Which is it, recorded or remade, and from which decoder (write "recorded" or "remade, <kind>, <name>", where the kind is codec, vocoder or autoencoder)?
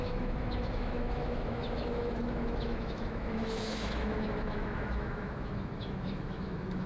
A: remade, autoencoder, DAC-VAE